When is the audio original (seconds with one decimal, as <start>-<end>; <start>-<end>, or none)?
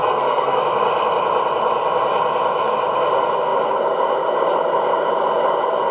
0.6-5.9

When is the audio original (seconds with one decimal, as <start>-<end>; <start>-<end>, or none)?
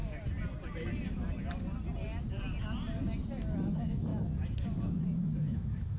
0.0-3.6; 4.1-5.2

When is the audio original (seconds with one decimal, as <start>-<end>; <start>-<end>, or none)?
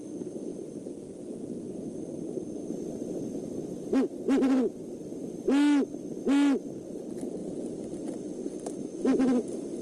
0.0-9.8